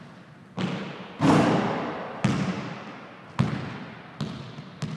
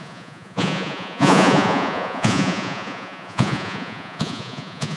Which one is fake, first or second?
second